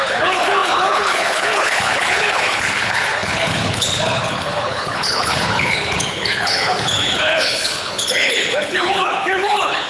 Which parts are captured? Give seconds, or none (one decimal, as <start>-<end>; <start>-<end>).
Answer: none